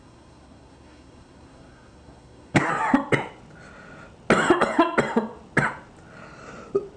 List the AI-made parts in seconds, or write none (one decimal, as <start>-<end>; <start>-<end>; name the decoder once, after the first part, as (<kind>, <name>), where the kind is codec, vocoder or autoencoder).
0.0-2.7 (codec, SNAC)